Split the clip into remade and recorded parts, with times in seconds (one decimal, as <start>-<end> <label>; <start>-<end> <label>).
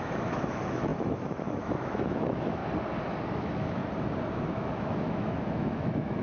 0.0-2.6 remade; 2.6-3.3 recorded; 3.3-3.8 remade; 3.8-4.3 recorded; 4.3-6.2 remade